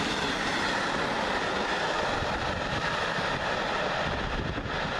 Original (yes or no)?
yes